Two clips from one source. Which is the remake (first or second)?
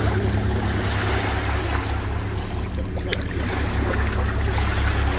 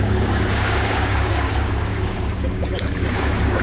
second